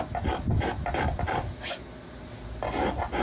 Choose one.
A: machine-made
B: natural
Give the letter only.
B